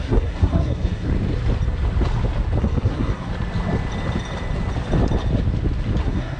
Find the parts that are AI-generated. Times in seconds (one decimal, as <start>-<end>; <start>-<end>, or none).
0.0-1.1; 2.6-3.3; 6.0-6.4